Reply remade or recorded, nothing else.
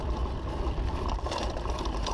recorded